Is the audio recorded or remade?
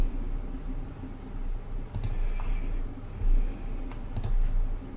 recorded